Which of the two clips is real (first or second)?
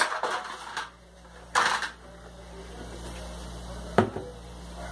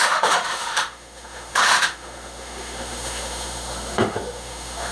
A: first